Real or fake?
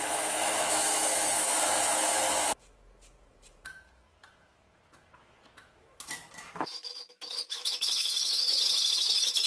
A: fake